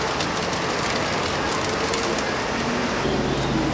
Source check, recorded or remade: recorded